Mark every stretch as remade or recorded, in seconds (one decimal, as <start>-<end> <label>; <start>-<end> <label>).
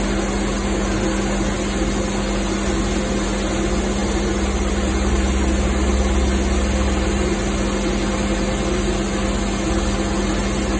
0.0-10.8 recorded